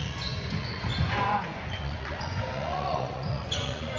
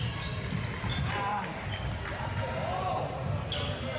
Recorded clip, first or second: second